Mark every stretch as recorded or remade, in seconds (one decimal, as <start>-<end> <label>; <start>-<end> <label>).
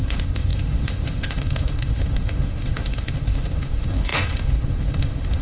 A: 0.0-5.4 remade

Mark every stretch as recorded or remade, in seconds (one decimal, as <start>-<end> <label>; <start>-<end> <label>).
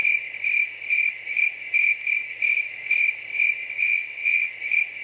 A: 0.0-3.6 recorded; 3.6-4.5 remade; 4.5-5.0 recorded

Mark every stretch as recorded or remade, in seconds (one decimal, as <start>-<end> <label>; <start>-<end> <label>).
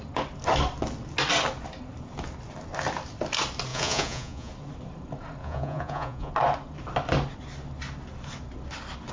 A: 0.0-3.7 recorded; 3.7-4.5 remade; 4.5-5.4 recorded; 5.4-6.3 remade; 6.3-9.1 recorded